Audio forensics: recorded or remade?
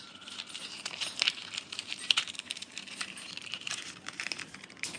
remade